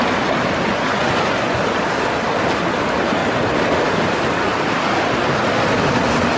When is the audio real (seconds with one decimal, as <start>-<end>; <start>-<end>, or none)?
0.0-0.7; 1.6-6.4